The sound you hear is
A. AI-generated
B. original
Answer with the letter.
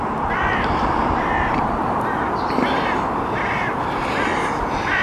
B